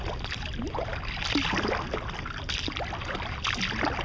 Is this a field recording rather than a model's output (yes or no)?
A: yes